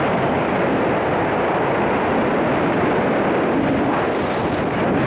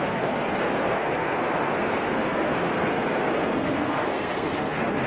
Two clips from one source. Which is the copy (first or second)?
second